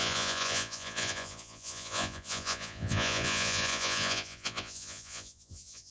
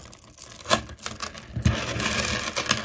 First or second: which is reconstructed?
first